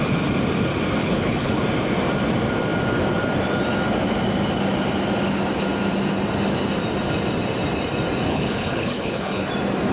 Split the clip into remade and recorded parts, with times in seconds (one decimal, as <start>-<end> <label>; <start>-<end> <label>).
0.0-1.0 recorded; 1.0-1.6 remade; 1.6-8.3 recorded; 8.3-9.5 remade; 9.5-9.9 recorded